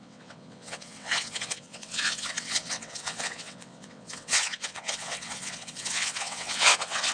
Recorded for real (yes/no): no